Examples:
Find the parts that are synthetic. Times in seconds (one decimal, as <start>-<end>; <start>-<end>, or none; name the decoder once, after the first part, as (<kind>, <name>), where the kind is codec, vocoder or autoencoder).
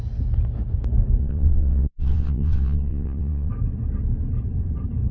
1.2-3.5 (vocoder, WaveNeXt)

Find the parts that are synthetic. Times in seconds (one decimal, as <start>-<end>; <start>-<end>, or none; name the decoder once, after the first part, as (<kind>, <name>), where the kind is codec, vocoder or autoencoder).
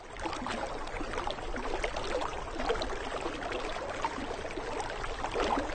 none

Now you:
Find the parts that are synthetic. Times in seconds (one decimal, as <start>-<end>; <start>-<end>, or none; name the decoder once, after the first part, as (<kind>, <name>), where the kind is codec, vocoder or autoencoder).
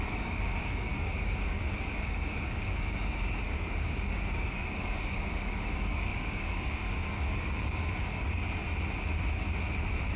0.0-8.6 (codec, DAC)